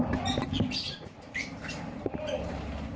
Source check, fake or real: fake